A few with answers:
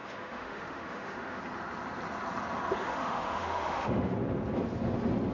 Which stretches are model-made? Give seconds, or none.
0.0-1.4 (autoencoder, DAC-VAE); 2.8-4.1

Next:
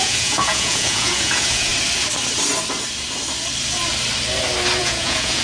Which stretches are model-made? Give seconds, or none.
0.0-1.7 (vocoder, Vocos); 4.8-5.4

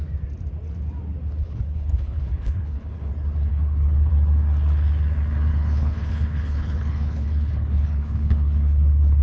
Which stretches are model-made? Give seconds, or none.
1.4-3.1 (codec, HILCodec); 3.5-4.1; 5.5-9.2

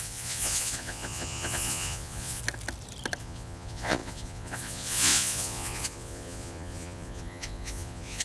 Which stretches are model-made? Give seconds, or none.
0.0-2.4 (vocoder, Vocos); 3.2-8.2

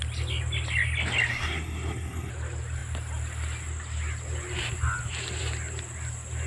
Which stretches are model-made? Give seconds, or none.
1.3-2.3 (codec, SNAC)

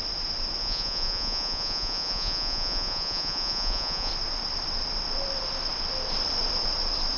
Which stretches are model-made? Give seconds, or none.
0.6-4.1 (vocoder, Vocos)

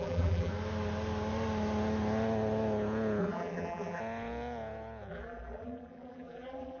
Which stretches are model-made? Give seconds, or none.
0.0-0.5 (vocoder, BigVGAN v2); 3.2-4.0; 5.1-6.8

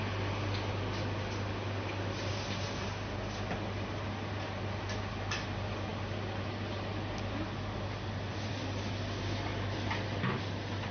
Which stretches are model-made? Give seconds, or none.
none